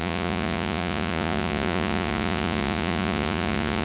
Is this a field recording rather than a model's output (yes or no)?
no